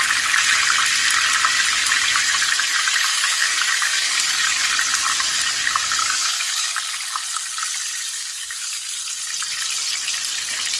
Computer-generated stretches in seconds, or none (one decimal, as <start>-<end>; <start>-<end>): 3.1-4.7; 6.0-6.8; 8.2-8.9